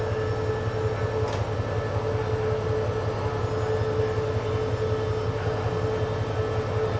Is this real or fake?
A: real